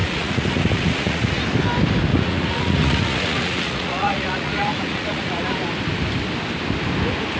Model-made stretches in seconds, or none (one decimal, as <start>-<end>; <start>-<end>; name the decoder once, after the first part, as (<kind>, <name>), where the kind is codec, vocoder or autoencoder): 0.0-1.4 (vocoder, Vocos); 2.1-5.4